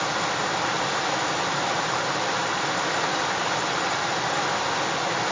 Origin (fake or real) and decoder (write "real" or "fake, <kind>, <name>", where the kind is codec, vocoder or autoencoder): real